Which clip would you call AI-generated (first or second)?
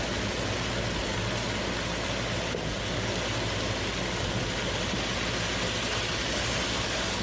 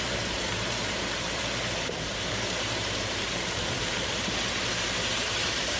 second